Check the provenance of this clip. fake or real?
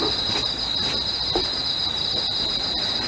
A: real